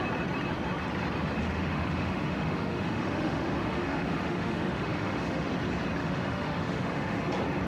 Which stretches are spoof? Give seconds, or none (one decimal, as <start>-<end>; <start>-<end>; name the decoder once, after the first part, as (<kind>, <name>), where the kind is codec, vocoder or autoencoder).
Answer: 1.4-5.5 (autoencoder, DAC-VAE); 6.0-7.2